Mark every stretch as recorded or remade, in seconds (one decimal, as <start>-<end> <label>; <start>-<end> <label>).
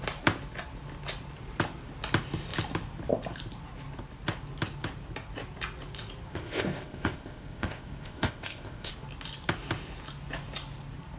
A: 0.0-6.3 recorded; 6.3-8.9 remade; 8.9-11.2 recorded